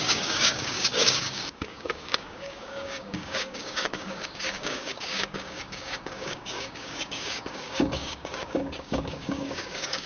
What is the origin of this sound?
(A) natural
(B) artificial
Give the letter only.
B